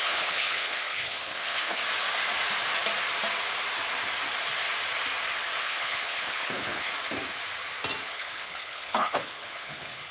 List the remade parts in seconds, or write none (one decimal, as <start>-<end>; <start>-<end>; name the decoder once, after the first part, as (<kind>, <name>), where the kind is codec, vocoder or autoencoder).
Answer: 0.0-1.8 (codec, HILCodec); 5.6-6.9; 8.1-10.1